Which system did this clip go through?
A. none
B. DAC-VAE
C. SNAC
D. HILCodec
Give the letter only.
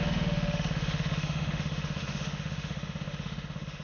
B